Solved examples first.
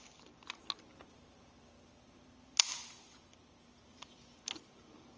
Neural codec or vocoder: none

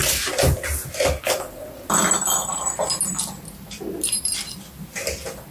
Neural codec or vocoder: none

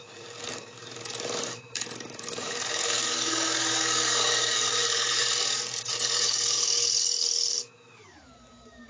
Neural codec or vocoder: codec, DAC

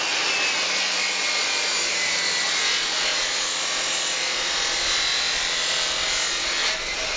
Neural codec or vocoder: none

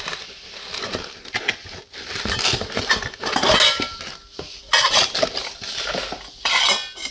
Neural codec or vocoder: none